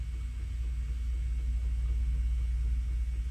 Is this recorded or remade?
recorded